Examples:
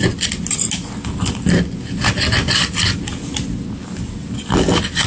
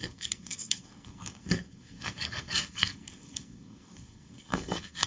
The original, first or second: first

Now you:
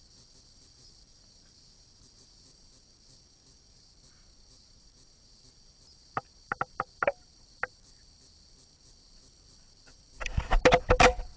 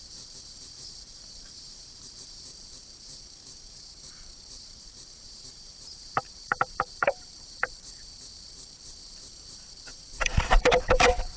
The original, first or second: first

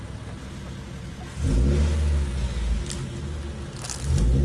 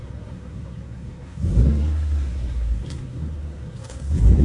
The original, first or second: first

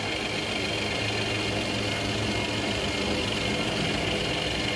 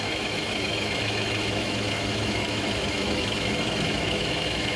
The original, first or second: first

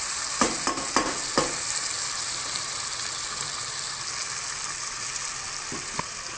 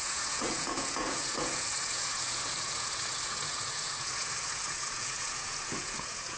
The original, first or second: first